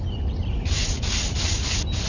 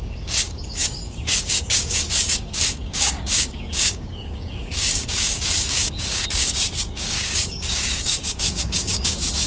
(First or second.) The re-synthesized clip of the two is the second